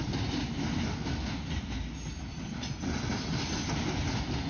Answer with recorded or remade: recorded